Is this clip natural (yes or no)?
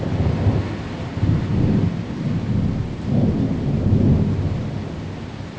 yes